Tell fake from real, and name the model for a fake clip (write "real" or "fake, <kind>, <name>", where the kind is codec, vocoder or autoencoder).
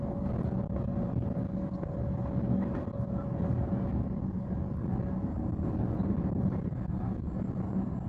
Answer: real